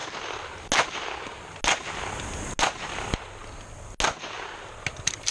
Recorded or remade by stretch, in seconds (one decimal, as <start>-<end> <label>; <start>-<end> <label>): 0.0-5.3 recorded